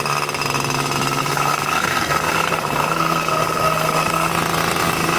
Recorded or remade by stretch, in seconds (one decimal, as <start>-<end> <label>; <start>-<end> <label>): 0.0-1.2 recorded; 1.2-4.3 remade; 4.3-5.2 recorded